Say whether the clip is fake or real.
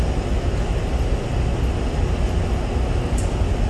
real